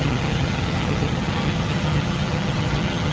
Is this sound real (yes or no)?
no